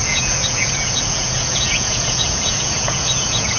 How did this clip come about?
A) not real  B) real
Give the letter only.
A